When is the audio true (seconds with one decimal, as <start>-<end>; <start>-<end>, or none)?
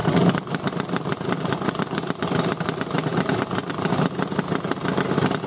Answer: 0.0-5.5